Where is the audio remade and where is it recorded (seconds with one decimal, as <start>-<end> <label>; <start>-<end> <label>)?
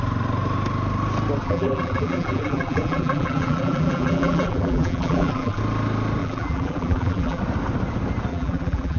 0.0-1.4 recorded; 1.4-5.6 remade; 5.6-6.2 recorded; 6.2-7.4 remade; 7.4-8.3 recorded; 8.3-9.0 remade